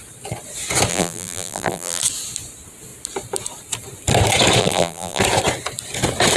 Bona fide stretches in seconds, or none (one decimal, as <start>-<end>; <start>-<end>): 0.0-0.9; 2.0-4.6; 5.2-6.4